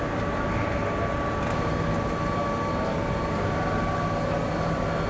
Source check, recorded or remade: recorded